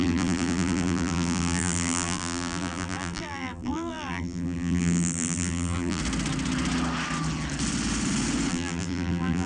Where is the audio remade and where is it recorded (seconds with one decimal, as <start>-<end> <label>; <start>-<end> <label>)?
0.0-6.0 remade; 6.0-8.5 recorded; 8.5-9.5 remade